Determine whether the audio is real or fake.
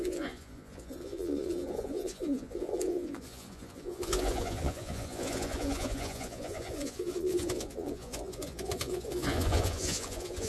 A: fake